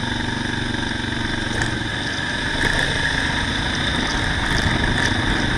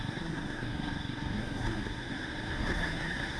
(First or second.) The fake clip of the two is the second